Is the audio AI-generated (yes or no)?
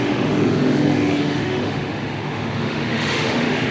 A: yes